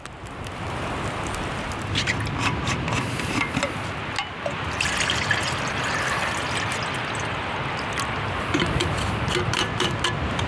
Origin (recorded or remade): recorded